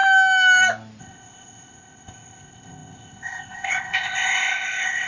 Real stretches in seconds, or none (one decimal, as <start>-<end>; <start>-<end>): 0.0-1.0